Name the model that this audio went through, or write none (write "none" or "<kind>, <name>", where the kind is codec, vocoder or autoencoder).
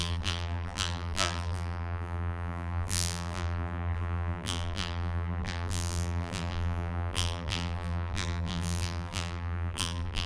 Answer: vocoder, BigVGAN v2